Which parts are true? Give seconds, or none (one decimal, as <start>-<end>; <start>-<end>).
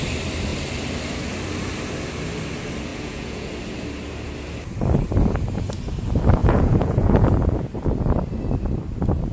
0.0-2.9; 3.5-6.4; 7.5-9.3